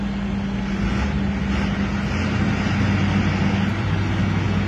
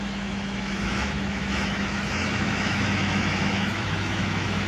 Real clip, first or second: first